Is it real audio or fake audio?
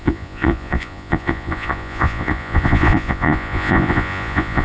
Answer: fake